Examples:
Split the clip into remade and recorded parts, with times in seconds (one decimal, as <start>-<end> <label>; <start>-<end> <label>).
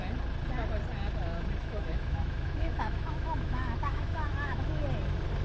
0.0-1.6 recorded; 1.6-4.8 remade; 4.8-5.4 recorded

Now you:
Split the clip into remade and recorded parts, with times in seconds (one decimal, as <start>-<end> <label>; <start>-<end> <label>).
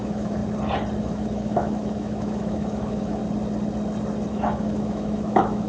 0.0-0.4 remade; 0.4-1.0 recorded; 1.0-3.2 remade; 3.2-4.3 recorded; 4.3-5.7 remade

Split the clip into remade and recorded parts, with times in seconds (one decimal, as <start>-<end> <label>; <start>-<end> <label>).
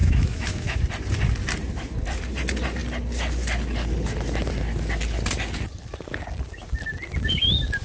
0.0-0.8 remade; 0.8-7.8 recorded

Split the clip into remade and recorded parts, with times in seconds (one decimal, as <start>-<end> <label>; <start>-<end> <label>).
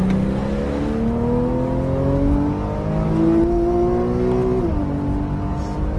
0.0-6.0 recorded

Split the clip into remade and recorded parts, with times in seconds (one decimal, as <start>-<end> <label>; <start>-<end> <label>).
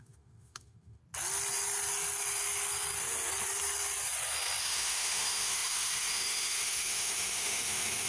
0.0-1.0 remade; 1.0-4.6 recorded; 4.6-8.1 remade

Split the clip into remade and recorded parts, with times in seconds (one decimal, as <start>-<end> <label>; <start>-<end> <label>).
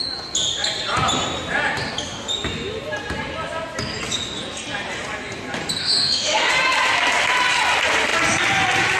0.0-5.8 recorded; 5.8-6.5 remade; 6.5-9.0 recorded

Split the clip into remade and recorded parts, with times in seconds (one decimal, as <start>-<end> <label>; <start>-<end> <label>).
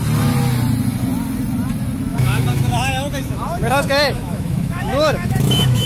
0.0-2.1 recorded; 2.1-5.9 remade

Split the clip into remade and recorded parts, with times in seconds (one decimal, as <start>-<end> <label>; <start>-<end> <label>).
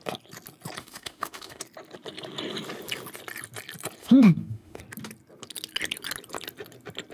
0.0-0.8 recorded; 0.8-1.6 remade; 1.6-4.0 recorded; 4.0-4.8 remade; 4.8-7.1 recorded